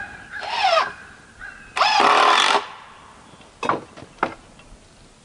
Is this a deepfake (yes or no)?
no